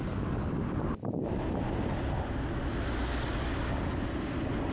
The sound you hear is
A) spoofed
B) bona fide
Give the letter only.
B